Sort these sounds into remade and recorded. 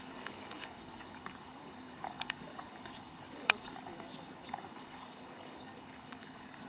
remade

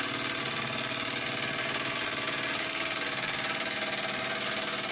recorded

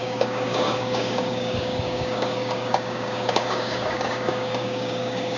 remade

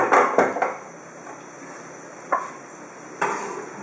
recorded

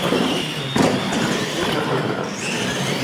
recorded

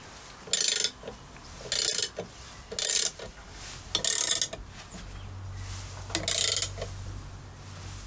recorded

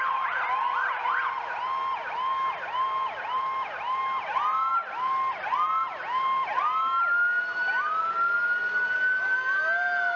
recorded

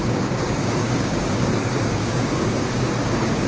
remade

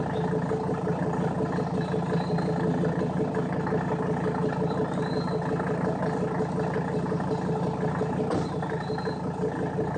recorded